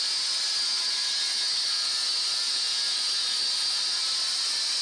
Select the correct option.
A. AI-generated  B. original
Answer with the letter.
B